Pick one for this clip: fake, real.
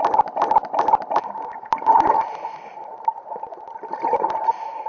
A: real